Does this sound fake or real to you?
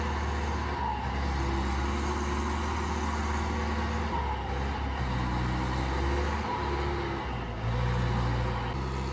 real